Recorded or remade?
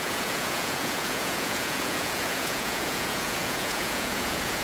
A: remade